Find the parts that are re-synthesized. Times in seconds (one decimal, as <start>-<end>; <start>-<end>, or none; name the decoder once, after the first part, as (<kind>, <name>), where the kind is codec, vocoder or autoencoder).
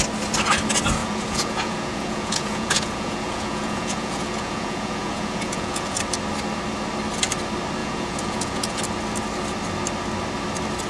1.0-6.0 (vocoder, Vocos); 7.8-8.8